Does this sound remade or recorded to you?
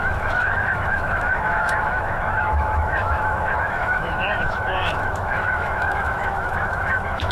remade